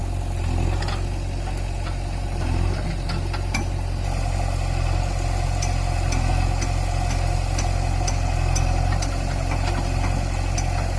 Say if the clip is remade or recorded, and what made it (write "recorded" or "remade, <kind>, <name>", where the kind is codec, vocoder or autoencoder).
recorded